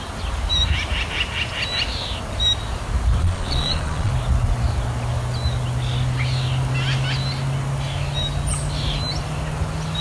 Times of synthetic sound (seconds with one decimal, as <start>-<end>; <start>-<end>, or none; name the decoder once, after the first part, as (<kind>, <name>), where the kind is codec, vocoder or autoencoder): 3.2-4.1 (vocoder, Vocos)